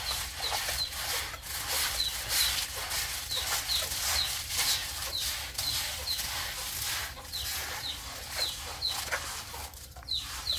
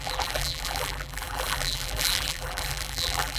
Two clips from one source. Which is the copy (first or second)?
second